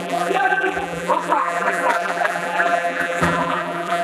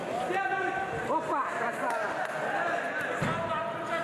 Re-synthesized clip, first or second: first